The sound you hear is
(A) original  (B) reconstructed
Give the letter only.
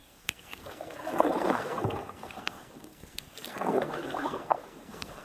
B